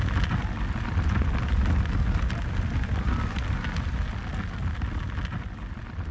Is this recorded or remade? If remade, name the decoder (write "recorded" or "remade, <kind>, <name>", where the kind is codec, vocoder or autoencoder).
recorded